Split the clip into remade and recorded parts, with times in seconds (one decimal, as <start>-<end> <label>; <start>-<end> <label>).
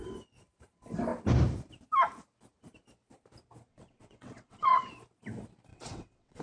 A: 0.0-3.7 recorded; 3.7-4.9 remade; 4.9-5.7 recorded; 5.7-6.4 remade